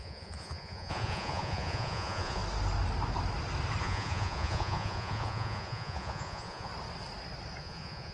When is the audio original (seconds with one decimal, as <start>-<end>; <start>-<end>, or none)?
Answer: 2.4-3.8; 6.7-7.6